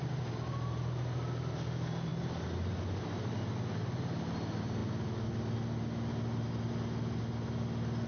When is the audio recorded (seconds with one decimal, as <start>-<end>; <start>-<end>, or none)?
0.0-8.1